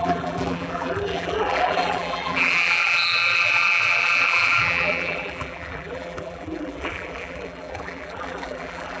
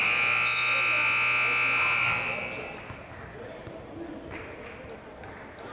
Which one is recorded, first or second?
second